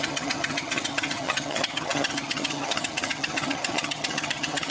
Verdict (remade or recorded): remade